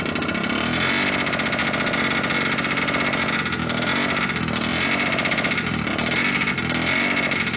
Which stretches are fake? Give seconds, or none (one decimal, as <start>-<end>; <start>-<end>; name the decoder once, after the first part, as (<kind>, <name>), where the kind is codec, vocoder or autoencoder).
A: none